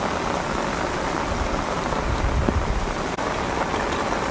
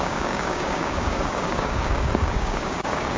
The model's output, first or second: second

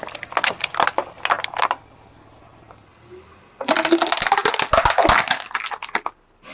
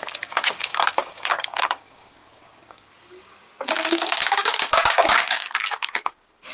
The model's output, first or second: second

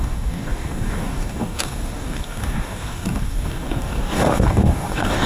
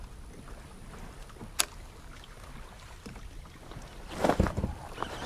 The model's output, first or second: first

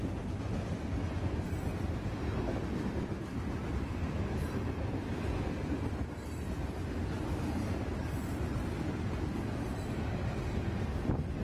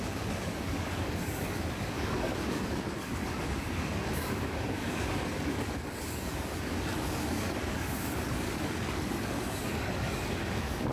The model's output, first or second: second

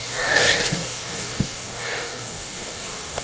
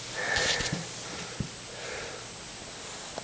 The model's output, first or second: first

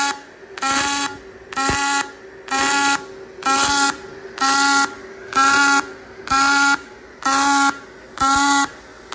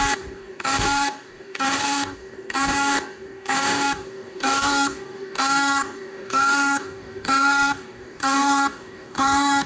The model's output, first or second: second